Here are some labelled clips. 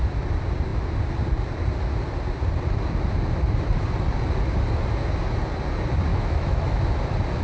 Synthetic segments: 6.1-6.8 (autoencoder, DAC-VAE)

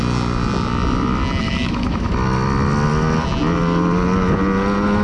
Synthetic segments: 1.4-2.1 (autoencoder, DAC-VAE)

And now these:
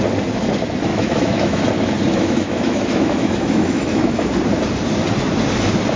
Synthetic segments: 0.9-1.6 (autoencoder, DAC-VAE); 2.1-4.3

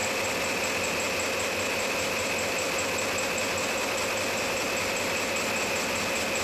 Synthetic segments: none

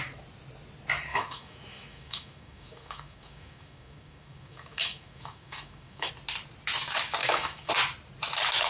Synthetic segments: 1.1-6.1 (autoencoder, DAC-VAE); 7.2-7.7